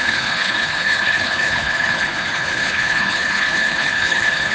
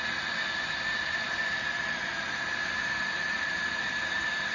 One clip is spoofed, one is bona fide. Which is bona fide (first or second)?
second